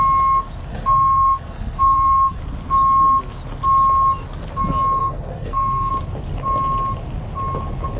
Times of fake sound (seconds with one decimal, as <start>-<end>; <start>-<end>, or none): 0.7-2.4; 5.0-5.9